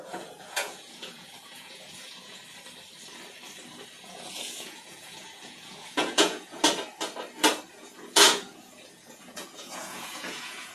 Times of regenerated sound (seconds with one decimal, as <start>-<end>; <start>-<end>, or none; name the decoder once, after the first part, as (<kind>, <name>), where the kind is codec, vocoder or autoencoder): 0.0-2.4 (vocoder, Vocos); 4.0-6.6; 7.7-10.7